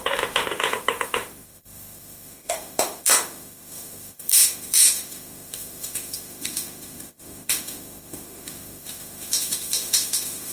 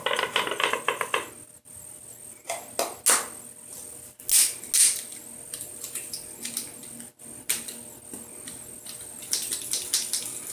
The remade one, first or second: first